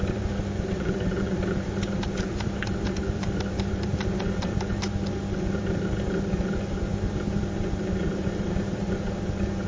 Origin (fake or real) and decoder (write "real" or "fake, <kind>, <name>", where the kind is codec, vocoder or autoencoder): fake, vocoder, BigVGAN v2